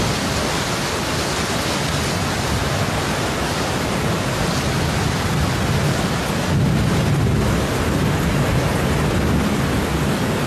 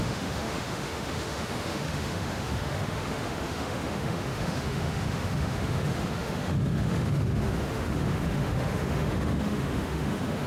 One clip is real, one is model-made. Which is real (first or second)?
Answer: first